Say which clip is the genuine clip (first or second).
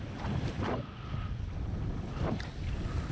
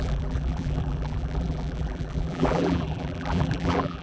first